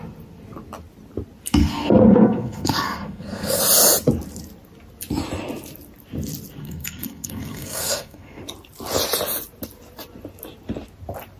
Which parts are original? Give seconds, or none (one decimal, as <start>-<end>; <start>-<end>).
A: 0.0-1.6; 3.6-6.6; 8.4-11.4